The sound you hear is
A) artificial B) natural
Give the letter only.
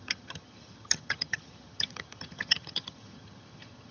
A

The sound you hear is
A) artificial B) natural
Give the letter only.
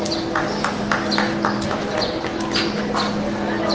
B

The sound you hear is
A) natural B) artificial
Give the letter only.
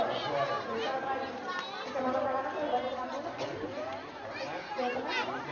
A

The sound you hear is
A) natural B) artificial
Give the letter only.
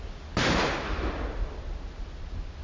A